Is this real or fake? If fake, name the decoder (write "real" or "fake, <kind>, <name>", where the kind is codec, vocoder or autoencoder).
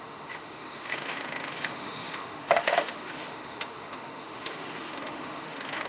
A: fake, autoencoder, DAC-VAE